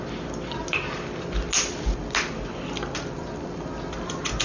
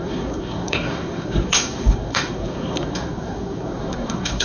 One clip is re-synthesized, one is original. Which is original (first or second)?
first